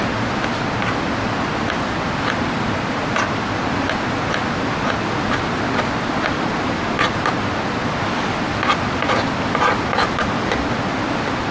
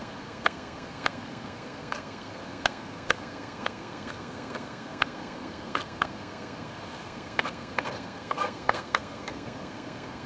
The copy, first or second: second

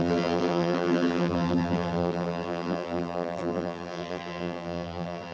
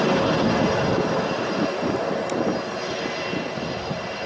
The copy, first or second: first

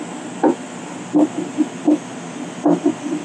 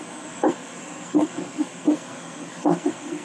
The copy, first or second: second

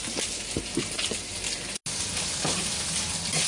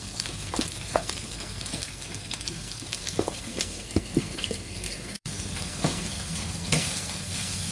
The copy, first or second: second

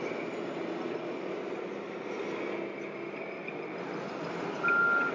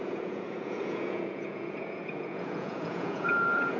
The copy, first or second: second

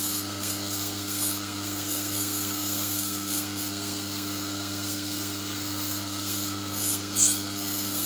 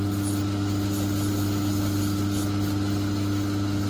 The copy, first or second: first